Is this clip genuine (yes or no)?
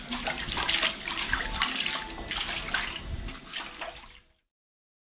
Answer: yes